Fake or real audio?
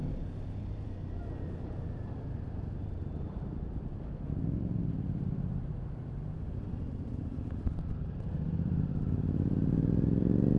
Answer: fake